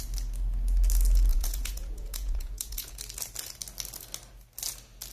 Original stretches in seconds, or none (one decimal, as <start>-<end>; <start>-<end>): 0.0-1.3; 3.0-5.1

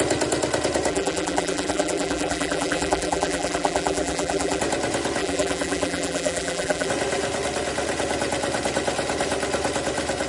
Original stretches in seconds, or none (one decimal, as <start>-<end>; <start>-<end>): 0.0-0.9; 4.6-5.2; 6.9-10.3

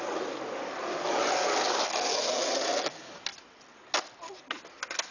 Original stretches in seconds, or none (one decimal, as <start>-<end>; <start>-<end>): 0.0-5.1